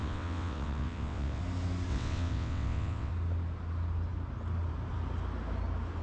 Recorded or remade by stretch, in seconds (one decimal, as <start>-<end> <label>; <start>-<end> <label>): 0.0-1.4 remade; 1.4-1.9 recorded; 1.9-3.1 remade; 3.1-6.0 recorded